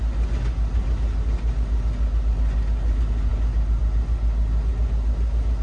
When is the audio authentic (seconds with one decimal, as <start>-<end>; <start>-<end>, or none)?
0.0-5.6

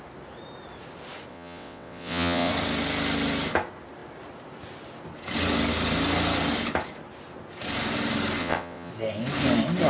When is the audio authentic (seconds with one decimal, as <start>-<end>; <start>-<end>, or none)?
0.0-1.3; 2.5-8.4; 8.9-9.9